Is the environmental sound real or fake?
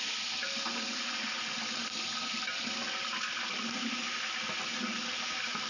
real